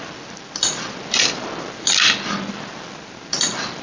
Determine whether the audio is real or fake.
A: real